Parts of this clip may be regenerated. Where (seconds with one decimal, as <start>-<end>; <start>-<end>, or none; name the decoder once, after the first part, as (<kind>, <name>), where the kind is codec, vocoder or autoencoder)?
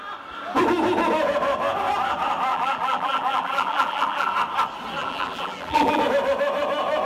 2.5-4.3 (vocoder, BigVGAN v2); 5.0-6.0